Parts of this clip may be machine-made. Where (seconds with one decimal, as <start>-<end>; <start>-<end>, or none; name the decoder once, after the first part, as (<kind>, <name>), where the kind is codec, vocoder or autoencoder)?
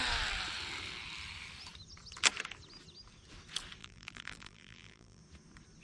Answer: 3.8-5.2 (vocoder, BigVGAN v2)